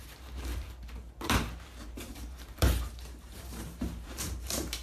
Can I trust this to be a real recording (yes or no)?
no